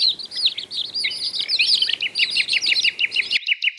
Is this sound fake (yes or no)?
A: no